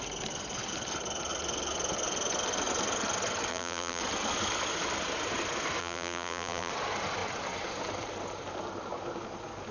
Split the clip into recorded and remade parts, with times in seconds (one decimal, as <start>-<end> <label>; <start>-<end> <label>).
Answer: 0.0-3.5 recorded; 3.5-4.0 remade; 4.0-5.8 recorded; 5.8-6.7 remade; 6.7-9.7 recorded

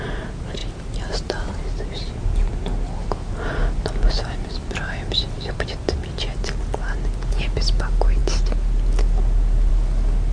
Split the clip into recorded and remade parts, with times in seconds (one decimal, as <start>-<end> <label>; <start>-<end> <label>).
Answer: 0.0-0.6 recorded; 0.6-1.5 remade; 1.5-10.3 recorded

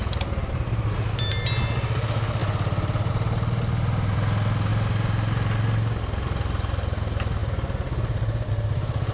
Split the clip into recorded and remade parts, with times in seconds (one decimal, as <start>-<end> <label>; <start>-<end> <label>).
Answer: 0.0-9.1 recorded

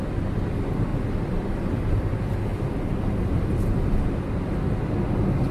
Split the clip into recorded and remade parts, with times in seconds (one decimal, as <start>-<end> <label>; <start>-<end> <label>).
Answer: 0.0-0.9 recorded; 0.9-2.1 remade; 2.1-2.5 recorded; 2.5-3.5 remade; 3.5-5.5 recorded

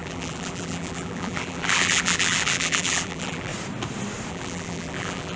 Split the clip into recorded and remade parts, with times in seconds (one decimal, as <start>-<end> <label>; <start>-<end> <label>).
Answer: 0.0-3.5 remade; 3.5-4.3 recorded; 4.3-5.4 remade